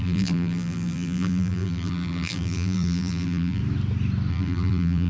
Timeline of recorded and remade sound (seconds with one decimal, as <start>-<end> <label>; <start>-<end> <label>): 0.0-3.6 remade; 3.6-4.3 recorded; 4.3-5.1 remade